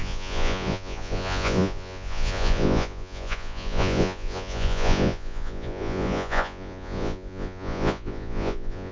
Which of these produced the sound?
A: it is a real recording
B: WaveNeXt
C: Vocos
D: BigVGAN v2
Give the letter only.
C